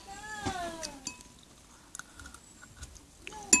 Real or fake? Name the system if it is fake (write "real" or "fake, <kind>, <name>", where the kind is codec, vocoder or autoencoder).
real